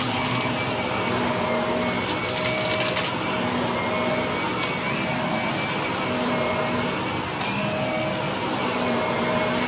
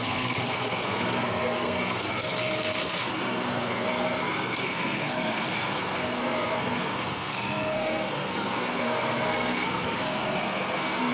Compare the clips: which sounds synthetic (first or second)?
second